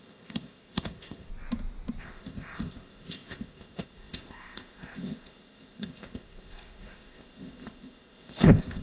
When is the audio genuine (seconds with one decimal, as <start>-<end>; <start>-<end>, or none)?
1.3-2.0